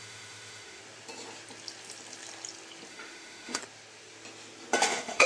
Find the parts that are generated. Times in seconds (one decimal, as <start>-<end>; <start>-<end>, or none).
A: 0.0-0.8; 2.9-3.6; 4.8-5.3